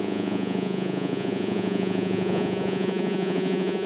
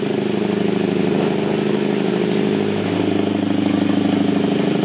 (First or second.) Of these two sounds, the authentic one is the second